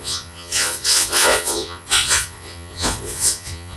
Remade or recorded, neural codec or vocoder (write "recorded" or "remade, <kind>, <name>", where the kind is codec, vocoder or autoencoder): remade, vocoder, Vocos